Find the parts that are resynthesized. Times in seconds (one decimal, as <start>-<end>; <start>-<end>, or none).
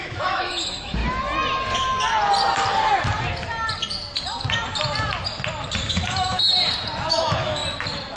0.0-1.0; 5.9-6.5; 7.1-7.6